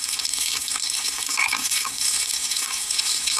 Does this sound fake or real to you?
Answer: fake